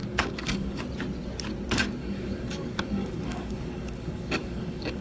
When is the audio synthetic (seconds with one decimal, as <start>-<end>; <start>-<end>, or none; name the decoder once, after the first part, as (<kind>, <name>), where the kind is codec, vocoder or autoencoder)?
0.0-0.8 (codec, DAC); 2.0-5.0